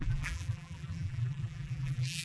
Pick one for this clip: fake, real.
fake